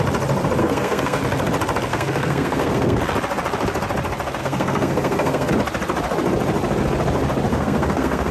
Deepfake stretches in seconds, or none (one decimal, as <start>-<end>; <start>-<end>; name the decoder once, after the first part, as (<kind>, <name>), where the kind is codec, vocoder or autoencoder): 0.6-1.2 (codec, SNAC); 1.9-3.0; 4.4-5.5; 7.5-8.3